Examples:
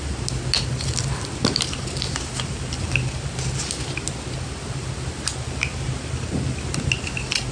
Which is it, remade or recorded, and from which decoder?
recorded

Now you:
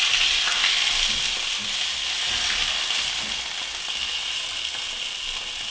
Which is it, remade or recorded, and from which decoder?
recorded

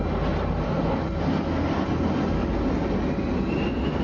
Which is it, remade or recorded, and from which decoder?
recorded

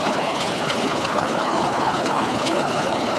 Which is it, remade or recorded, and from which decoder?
remade, codec, HILCodec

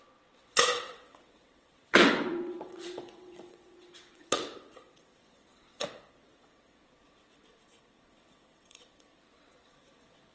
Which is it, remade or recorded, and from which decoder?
remade, vocoder, WaveNeXt